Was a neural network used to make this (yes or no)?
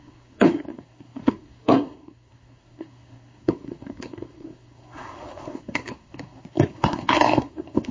yes